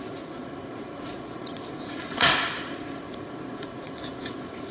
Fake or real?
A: fake